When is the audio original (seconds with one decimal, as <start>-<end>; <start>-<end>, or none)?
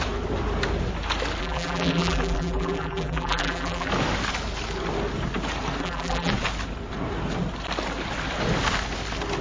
0.0-1.4; 3.9-5.8; 6.3-9.4